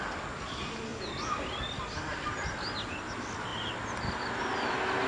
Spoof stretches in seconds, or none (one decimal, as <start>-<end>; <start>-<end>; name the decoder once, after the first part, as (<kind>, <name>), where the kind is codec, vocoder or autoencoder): none